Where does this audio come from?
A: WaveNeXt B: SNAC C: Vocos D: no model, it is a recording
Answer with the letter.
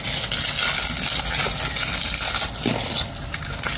D